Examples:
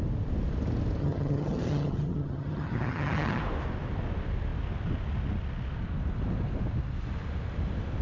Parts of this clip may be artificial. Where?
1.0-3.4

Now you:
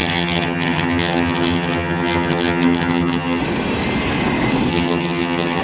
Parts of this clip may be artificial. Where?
0.0-3.4; 4.7-5.6

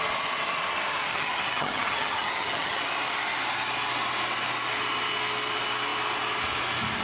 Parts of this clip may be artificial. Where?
1.1-2.8

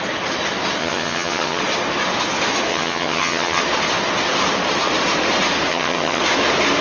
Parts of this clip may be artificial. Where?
0.8-1.6; 2.7-3.6; 5.7-6.2

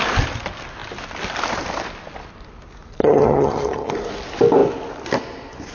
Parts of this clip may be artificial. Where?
3.0-3.9

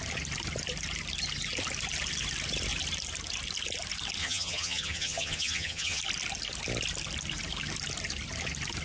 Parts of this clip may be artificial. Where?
4.2-6.0